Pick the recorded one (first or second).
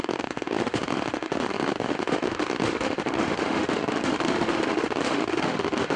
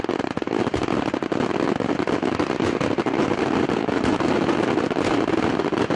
second